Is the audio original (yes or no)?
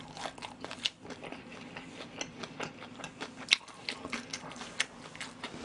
yes